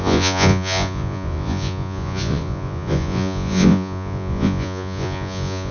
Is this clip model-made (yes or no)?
yes